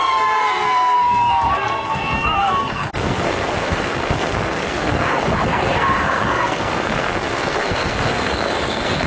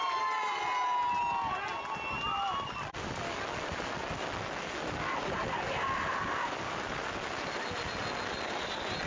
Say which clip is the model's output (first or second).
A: first